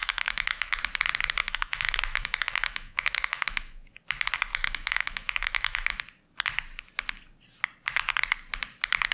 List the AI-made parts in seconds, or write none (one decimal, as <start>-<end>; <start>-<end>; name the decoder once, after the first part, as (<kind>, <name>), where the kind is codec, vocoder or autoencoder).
0.0-0.8 (autoencoder, DAC-VAE); 1.4-3.9; 4.5-6.0